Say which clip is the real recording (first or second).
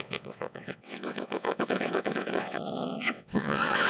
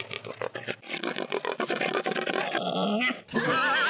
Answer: second